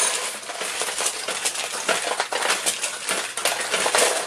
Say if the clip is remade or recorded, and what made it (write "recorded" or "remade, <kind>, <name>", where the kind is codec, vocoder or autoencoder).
recorded